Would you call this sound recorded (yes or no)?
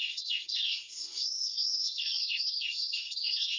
no